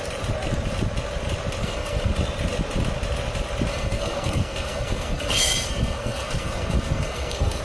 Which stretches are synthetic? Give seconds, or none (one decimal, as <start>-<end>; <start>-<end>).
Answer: 1.6-2.1; 3.7-7.6